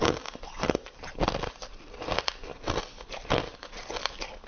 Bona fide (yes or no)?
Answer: yes